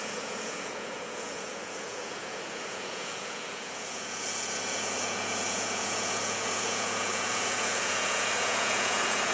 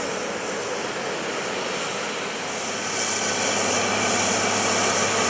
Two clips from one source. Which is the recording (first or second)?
second